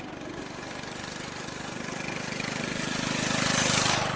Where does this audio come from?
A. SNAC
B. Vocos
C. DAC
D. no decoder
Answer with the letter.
D